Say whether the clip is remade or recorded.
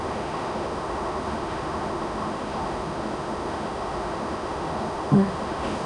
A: remade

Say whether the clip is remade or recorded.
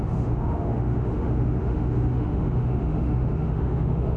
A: remade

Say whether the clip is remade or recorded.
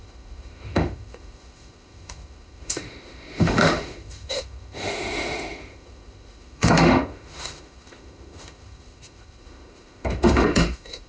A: remade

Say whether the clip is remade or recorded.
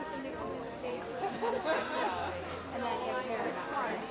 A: recorded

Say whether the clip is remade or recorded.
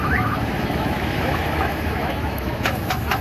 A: remade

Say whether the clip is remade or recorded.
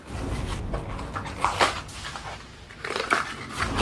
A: recorded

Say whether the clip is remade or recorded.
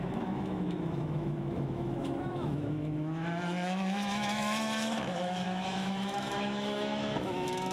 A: remade